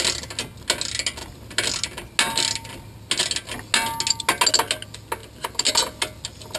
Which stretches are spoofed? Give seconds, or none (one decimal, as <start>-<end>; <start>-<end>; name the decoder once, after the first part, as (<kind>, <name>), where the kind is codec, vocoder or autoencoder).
none